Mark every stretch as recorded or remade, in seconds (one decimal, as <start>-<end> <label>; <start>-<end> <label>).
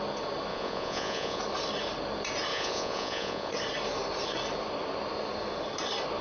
0.0-0.5 recorded; 0.5-1.4 remade; 1.4-2.5 recorded; 2.5-3.5 remade; 3.5-6.2 recorded